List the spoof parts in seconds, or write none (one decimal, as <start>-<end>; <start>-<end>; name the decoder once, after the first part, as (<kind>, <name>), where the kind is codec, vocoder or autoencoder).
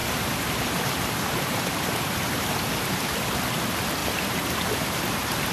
0.0-3.3 (vocoder, BigVGAN v2); 4.0-5.0